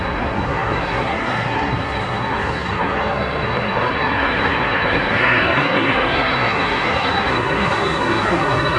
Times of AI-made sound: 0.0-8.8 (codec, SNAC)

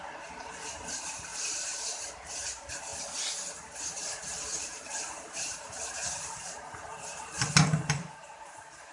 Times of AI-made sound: 0.0-2.9 (vocoder, BigVGAN v2); 3.6-8.9

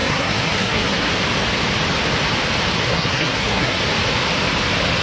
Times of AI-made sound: 0.0-1.1 (codec, SNAC); 2.9-3.8